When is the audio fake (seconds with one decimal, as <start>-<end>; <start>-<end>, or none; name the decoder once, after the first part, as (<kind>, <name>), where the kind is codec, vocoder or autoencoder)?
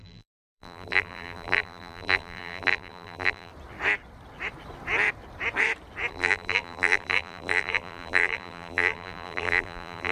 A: 0.0-3.5 (vocoder, BigVGAN v2); 6.1-10.1